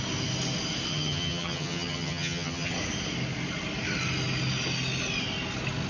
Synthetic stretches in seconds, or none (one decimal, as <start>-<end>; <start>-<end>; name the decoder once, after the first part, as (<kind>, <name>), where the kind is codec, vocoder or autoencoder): 0.9-2.7 (vocoder, HiFi-GAN)